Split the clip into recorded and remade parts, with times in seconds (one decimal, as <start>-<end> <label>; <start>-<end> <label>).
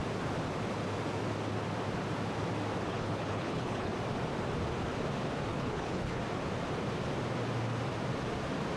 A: 0.0-2.9 recorded; 2.9-3.9 remade; 3.9-5.5 recorded; 5.5-6.2 remade; 6.2-8.8 recorded